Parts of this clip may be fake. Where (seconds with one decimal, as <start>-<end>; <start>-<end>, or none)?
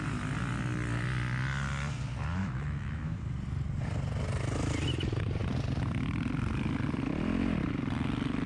2.4-3.2